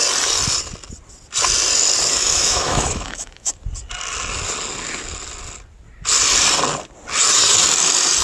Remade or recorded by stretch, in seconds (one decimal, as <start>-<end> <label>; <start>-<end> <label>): 0.0-2.2 recorded; 2.2-3.5 remade; 3.5-8.2 recorded